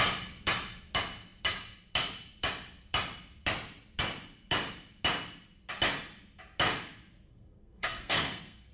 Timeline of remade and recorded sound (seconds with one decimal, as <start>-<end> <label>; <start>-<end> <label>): 0.0-7.3 recorded; 7.3-8.7 remade